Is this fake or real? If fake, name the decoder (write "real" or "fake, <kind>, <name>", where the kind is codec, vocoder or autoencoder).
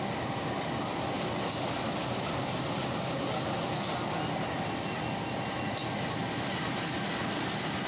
real